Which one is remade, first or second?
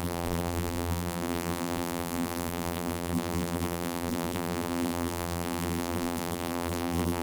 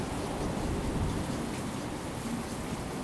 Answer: first